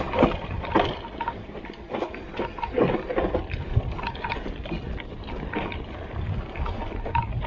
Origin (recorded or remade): recorded